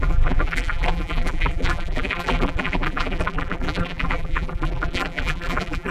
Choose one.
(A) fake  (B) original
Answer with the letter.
A